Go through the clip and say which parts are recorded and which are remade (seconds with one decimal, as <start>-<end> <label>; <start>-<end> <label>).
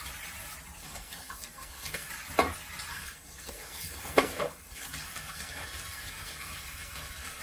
0.0-0.8 recorded; 0.8-2.1 remade; 2.1-2.9 recorded; 2.9-7.4 remade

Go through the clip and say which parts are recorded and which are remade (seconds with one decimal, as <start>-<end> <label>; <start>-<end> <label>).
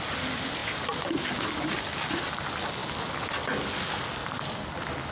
0.0-5.1 recorded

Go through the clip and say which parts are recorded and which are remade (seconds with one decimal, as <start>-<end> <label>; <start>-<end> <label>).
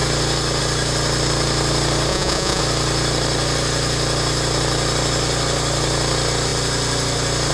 0.0-2.1 recorded; 2.1-2.6 remade; 2.6-7.5 recorded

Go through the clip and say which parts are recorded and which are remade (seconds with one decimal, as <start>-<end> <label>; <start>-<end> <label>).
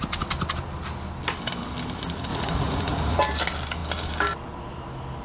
0.0-2.3 recorded; 2.3-3.2 remade; 3.2-5.2 recorded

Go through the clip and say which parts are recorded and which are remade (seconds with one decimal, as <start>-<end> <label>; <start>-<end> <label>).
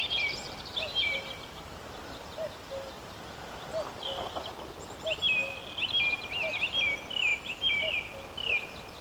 0.0-2.0 recorded; 2.0-4.5 remade; 4.5-9.0 recorded